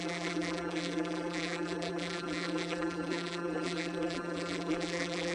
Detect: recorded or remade remade